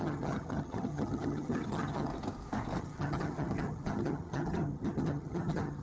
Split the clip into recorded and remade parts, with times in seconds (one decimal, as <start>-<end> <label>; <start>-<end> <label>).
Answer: 0.0-2.1 remade; 2.1-2.8 recorded; 2.8-5.8 remade